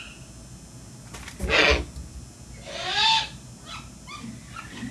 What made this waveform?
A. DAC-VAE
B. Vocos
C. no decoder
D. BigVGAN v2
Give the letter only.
C